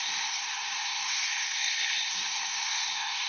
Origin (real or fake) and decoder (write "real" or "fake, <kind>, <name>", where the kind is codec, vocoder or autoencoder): fake, codec, SNAC